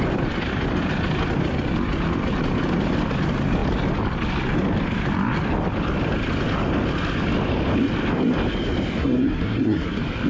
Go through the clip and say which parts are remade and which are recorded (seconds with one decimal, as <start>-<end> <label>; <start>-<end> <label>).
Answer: 0.0-9.0 recorded; 9.0-9.9 remade; 9.9-10.3 recorded